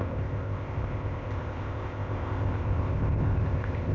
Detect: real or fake fake